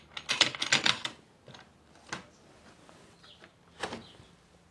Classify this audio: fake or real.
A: real